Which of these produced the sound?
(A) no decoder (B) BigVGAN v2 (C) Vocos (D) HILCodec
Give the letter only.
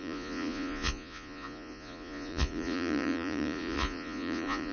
C